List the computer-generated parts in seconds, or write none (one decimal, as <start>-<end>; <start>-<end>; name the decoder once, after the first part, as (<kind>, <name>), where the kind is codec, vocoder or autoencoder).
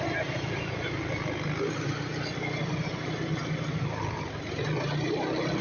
3.4-4.0 (vocoder, BigVGAN v2)